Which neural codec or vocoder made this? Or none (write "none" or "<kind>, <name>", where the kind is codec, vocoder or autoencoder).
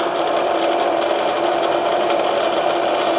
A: vocoder, BigVGAN v2